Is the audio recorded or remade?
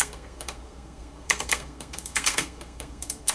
remade